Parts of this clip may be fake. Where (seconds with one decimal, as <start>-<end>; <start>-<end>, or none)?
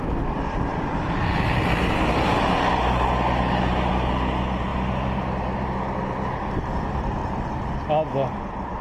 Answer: none